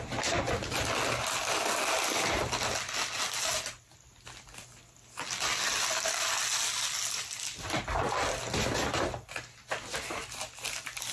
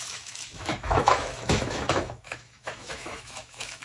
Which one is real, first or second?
first